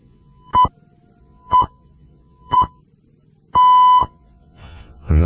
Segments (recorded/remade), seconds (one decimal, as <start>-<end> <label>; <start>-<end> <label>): 0.0-0.5 remade; 0.5-1.2 recorded; 1.2-2.8 remade; 2.8-4.0 recorded; 4.0-5.3 remade